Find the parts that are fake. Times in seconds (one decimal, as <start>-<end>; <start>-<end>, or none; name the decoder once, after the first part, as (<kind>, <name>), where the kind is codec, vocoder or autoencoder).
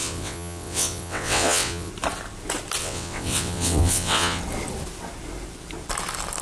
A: 0.0-1.9 (vocoder, WaveNeXt); 2.8-4.4